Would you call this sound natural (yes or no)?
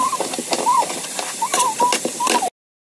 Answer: yes